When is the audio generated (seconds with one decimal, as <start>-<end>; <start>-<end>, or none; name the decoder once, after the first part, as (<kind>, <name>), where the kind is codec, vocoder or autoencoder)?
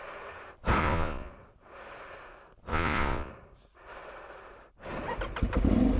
0.8-1.3 (vocoder, Vocos); 2.7-3.3